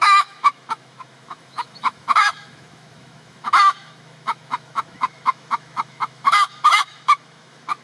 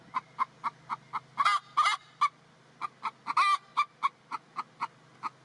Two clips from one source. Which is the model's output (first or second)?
first